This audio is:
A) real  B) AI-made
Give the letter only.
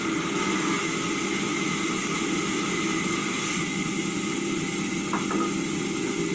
A